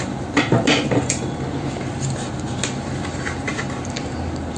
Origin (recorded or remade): recorded